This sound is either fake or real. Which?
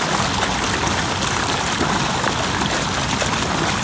real